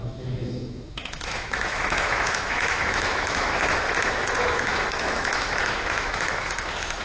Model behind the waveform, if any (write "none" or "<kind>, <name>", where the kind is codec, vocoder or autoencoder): autoencoder, DAC-VAE